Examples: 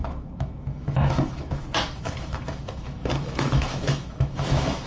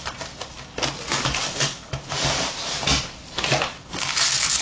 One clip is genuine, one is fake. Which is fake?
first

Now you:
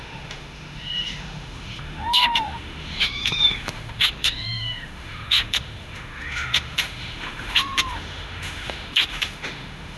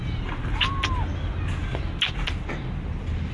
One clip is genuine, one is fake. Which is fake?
first